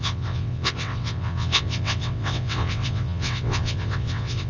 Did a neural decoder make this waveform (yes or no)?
yes